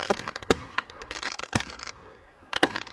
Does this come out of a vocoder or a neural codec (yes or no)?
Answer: yes